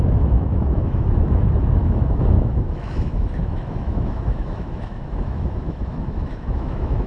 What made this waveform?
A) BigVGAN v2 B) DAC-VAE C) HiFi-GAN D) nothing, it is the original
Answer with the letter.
B